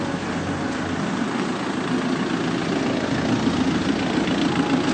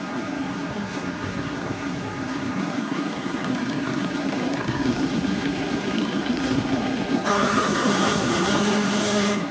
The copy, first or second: second